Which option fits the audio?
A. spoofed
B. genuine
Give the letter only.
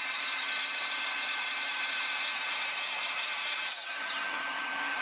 A